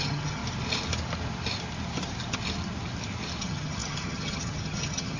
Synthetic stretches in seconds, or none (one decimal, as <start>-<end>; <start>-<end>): 0.0-0.4; 3.4-5.2